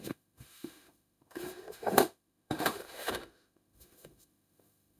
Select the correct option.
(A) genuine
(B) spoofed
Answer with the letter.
B